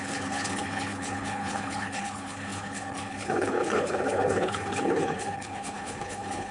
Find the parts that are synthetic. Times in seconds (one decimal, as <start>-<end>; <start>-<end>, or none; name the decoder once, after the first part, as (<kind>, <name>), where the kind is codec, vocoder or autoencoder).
0.0-6.5 (codec, HILCodec)